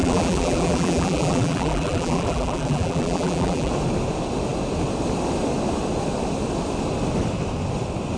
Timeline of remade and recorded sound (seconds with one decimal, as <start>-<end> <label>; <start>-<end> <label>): 0.0-3.7 remade; 3.7-8.2 recorded